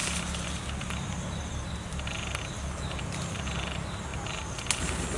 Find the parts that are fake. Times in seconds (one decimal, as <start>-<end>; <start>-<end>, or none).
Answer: none